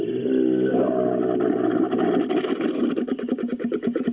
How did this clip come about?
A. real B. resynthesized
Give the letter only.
A